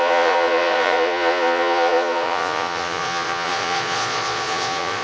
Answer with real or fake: fake